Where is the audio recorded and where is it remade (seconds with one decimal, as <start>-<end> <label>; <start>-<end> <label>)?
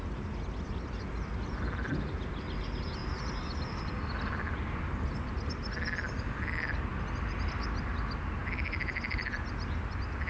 0.0-10.3 recorded